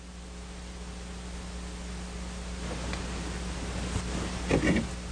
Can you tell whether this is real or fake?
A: real